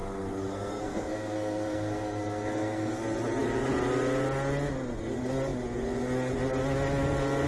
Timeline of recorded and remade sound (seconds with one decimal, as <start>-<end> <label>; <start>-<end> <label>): 0.0-2.9 remade; 2.9-7.5 recorded